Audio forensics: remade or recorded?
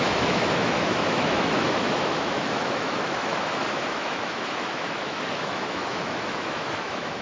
remade